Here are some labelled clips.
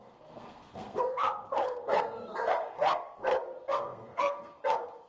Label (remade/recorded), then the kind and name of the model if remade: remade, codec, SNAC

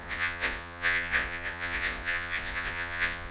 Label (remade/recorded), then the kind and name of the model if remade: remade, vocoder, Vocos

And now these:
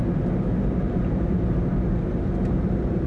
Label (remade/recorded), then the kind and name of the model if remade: recorded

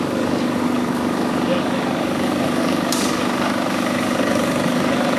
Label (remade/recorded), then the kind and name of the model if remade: remade, codec, DAC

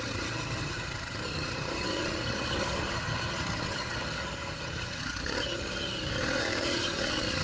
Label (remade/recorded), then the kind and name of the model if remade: remade, vocoder, HiFi-GAN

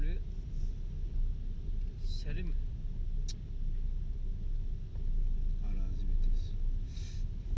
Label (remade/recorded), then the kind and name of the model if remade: recorded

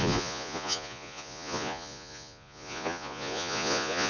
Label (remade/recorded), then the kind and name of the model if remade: remade, vocoder, Vocos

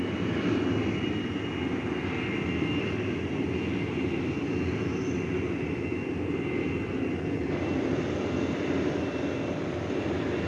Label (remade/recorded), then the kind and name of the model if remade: recorded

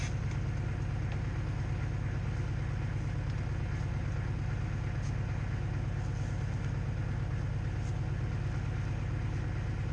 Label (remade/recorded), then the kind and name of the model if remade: recorded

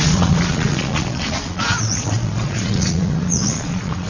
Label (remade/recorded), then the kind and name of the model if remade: remade, vocoder, Vocos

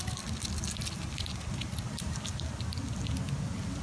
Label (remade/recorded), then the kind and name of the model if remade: recorded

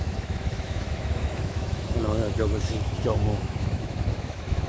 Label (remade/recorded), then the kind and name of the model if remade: remade, autoencoder, DAC-VAE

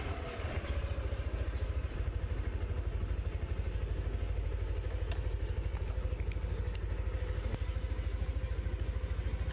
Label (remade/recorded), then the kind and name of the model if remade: recorded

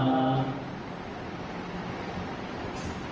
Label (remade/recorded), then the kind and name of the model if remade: recorded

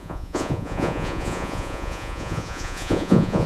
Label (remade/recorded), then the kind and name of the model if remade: remade, vocoder, Vocos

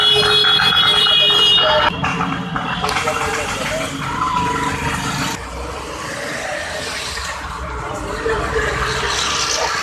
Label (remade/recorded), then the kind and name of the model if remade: recorded